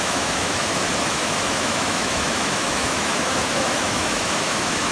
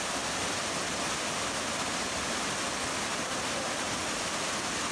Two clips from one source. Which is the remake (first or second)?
first